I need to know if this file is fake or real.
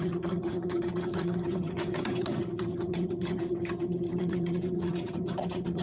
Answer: fake